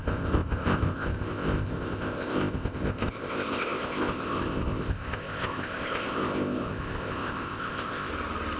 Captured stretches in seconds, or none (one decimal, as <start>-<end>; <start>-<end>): 8.1-8.6